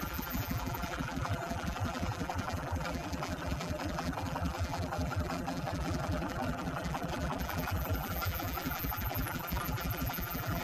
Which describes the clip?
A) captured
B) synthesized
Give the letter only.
B